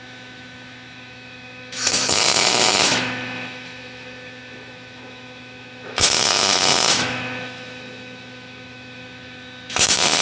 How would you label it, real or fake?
fake